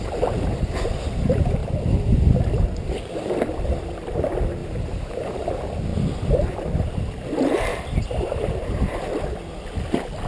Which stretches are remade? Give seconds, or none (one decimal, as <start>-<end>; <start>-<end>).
4.6-5.1; 5.9-6.7; 7.7-9.1